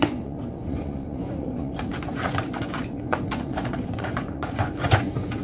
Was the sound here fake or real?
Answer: fake